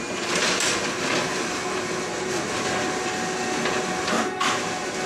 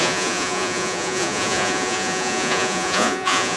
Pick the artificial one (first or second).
second